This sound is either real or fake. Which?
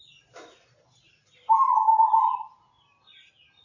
real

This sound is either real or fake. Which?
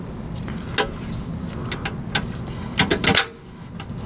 real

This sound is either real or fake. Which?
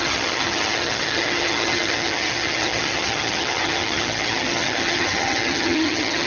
fake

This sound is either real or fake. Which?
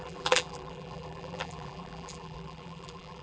fake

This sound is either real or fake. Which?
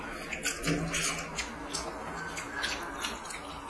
real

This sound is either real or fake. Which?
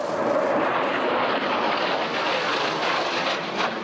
real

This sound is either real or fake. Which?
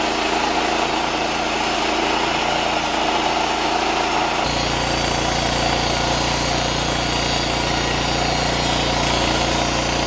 real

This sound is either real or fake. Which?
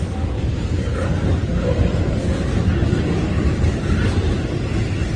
real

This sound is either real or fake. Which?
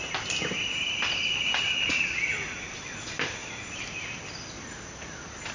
real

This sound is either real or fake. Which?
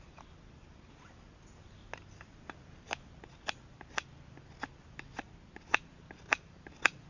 real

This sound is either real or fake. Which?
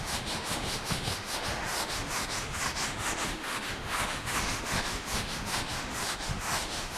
fake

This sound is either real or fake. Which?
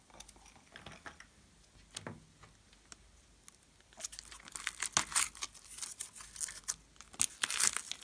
real